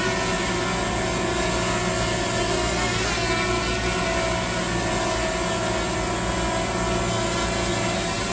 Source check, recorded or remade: recorded